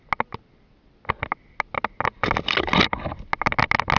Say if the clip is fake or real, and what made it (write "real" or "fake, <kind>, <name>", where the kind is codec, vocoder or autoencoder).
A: real